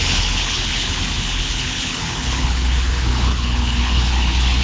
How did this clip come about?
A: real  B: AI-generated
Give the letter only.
B